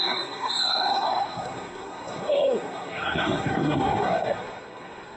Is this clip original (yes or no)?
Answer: no